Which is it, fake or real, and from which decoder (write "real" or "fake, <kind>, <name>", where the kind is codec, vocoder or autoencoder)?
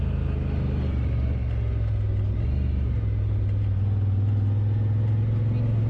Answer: real